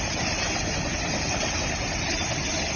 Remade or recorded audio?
recorded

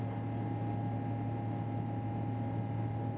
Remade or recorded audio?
recorded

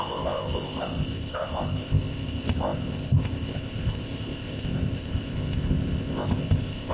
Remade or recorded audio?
remade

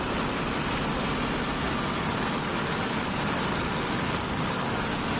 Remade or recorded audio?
recorded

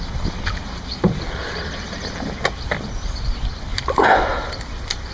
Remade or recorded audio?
recorded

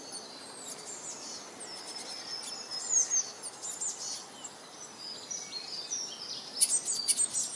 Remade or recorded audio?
recorded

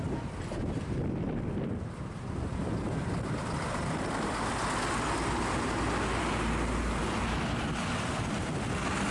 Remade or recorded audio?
recorded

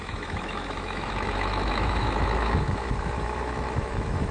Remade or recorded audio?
remade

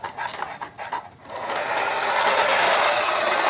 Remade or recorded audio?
recorded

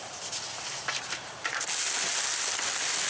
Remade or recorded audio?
recorded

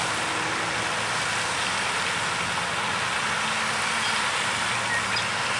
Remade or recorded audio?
recorded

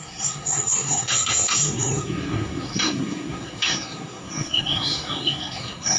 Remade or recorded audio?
remade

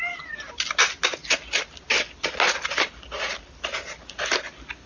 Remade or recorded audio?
recorded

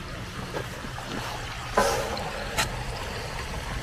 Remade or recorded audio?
recorded